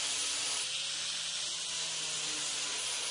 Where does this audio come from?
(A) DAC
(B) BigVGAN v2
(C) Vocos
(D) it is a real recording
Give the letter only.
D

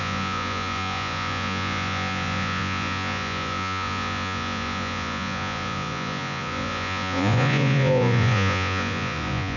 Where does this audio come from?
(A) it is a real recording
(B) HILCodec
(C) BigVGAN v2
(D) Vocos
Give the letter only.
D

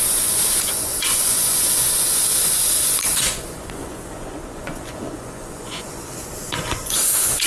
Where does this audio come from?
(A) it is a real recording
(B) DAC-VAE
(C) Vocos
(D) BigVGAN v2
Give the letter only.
C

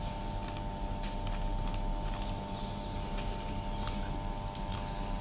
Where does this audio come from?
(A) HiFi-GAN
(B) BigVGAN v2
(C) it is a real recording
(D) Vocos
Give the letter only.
C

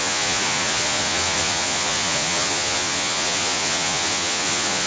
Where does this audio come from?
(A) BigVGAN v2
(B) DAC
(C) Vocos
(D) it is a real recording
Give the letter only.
C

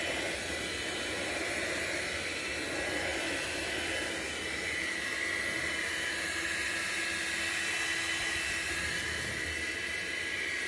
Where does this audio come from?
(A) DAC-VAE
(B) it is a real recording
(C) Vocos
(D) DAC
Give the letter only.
B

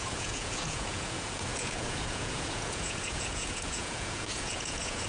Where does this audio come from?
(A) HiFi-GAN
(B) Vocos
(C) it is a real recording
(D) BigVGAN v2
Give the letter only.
B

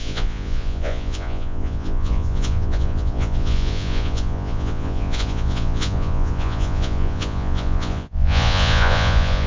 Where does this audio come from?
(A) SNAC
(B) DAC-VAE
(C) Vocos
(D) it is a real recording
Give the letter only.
C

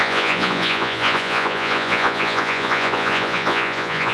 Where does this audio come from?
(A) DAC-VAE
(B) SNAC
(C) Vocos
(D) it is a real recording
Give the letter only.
C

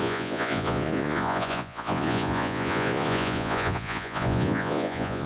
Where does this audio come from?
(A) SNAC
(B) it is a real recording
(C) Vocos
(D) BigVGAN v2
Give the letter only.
C